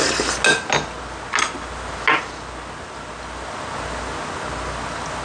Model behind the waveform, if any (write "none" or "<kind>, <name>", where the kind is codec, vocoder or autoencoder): none